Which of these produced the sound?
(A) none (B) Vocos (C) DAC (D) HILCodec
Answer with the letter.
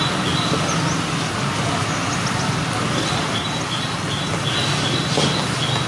A